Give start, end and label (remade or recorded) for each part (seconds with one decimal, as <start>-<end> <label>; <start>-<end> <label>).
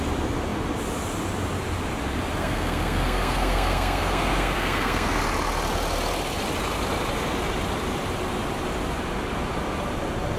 0.0-2.4 recorded; 2.4-5.2 remade; 5.2-10.4 recorded